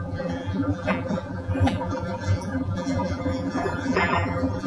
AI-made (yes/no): yes